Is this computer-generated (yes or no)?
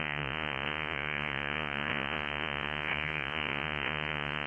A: yes